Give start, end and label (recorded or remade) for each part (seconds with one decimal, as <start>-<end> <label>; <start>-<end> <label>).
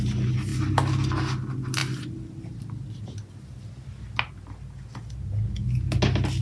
0.0-6.4 recorded